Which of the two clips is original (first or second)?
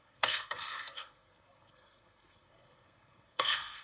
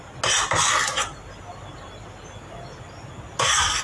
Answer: second